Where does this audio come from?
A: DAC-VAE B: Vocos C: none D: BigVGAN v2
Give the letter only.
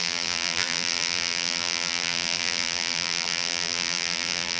D